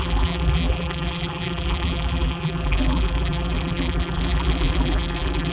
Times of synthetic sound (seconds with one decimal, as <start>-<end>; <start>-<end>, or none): 0.0-5.5